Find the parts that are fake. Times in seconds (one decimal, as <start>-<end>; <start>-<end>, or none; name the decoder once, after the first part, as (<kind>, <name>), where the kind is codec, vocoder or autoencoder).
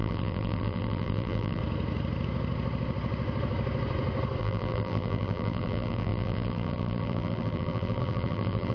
0.0-1.6 (vocoder, BigVGAN v2); 4.4-8.7